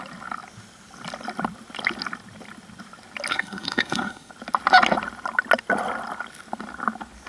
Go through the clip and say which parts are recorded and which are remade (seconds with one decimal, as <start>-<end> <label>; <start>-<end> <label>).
0.0-3.3 recorded; 3.3-4.3 remade; 4.3-7.3 recorded

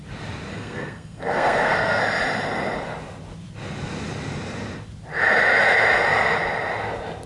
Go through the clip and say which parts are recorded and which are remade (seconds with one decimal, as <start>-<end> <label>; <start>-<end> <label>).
0.0-0.5 recorded; 0.5-2.0 remade; 2.0-7.3 recorded

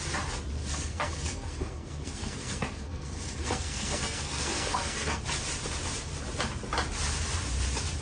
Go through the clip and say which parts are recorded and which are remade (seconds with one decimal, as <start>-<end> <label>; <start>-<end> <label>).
0.0-0.6 recorded; 0.6-5.2 remade; 5.2-8.0 recorded

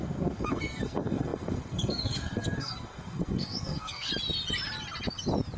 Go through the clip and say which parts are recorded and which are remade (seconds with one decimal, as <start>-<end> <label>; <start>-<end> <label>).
0.0-4.1 remade; 4.1-5.6 recorded

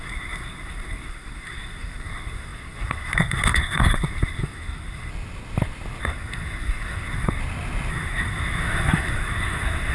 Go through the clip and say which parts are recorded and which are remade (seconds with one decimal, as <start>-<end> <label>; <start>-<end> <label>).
0.0-5.1 remade; 5.1-6.0 recorded; 6.0-7.4 remade; 7.4-7.9 recorded; 7.9-9.9 remade

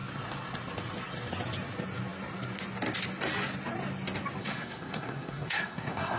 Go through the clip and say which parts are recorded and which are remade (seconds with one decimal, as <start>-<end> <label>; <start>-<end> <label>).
0.0-4.4 recorded; 4.4-6.2 remade